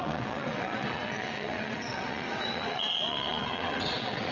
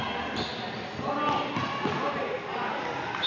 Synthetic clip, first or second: first